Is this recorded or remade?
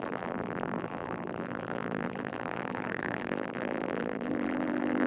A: remade